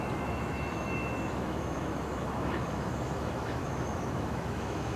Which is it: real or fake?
fake